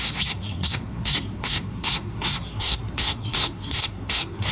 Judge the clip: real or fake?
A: fake